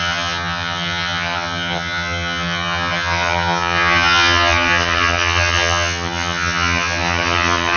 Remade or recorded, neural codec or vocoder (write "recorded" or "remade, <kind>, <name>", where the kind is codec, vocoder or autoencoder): remade, vocoder, HiFi-GAN